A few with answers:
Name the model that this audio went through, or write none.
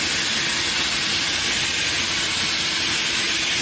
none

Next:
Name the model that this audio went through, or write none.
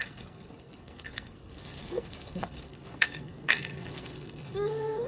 codec, SNAC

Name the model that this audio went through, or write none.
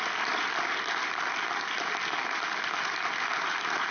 none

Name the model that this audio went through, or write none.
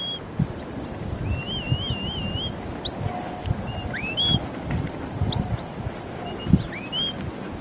none